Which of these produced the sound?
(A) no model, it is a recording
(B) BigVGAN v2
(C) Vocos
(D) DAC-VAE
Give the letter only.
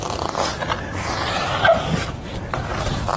A